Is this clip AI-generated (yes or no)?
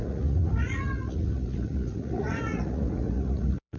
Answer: yes